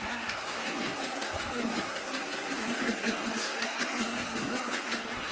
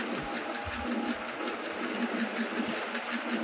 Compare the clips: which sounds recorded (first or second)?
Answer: second